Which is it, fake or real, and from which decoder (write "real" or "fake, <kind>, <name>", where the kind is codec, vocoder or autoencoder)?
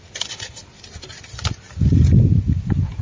real